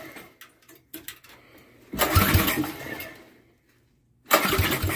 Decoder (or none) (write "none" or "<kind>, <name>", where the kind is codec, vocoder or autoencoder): none